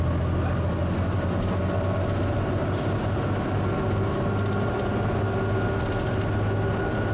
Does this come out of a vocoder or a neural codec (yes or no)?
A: no